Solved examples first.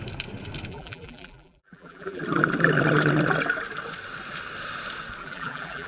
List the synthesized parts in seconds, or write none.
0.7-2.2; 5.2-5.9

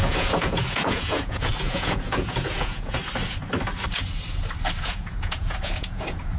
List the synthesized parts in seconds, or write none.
0.0-3.0; 4.8-6.4

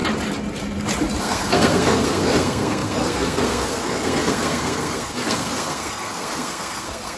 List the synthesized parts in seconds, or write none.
1.2-7.2

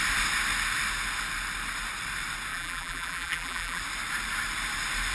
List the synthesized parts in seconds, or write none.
2.5-3.8